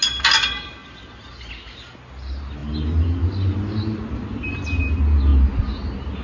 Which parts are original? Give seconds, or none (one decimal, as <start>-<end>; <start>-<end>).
0.0-6.2